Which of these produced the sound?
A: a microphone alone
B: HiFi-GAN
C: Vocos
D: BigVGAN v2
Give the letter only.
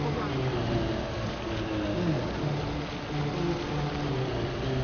A